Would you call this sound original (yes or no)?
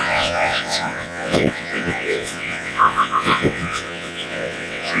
no